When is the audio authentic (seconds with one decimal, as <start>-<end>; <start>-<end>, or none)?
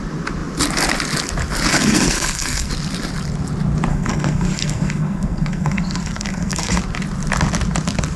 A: 0.0-1.7; 2.7-3.9; 6.8-8.2